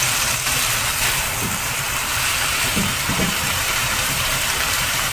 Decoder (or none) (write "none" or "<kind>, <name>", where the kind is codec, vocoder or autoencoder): vocoder, BigVGAN v2